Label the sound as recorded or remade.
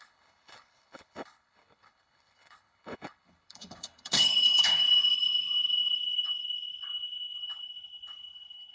remade